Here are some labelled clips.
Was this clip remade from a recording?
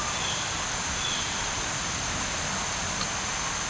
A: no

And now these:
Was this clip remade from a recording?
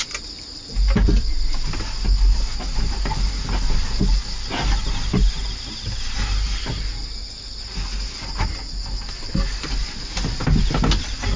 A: no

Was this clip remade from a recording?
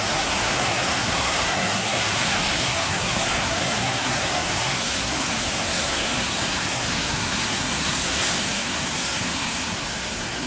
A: yes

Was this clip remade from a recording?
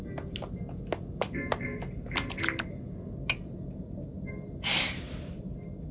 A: no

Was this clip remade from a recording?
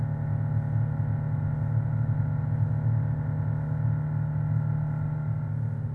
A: no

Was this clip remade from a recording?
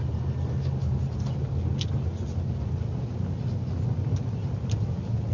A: no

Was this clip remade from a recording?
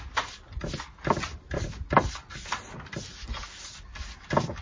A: no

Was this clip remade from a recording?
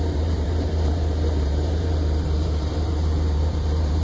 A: yes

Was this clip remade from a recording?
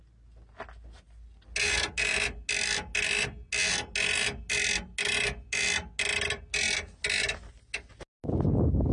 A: no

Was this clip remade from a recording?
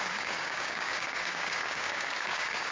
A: yes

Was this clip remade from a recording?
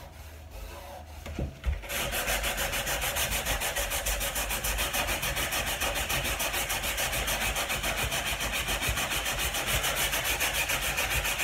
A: no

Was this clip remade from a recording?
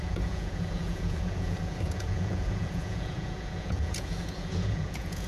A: yes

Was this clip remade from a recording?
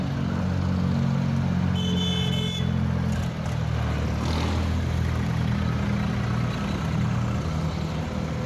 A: no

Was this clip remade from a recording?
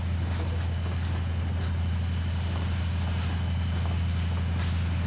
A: no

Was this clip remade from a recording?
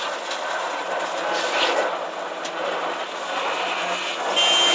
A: no